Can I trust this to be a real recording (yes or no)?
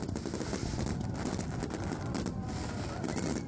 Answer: yes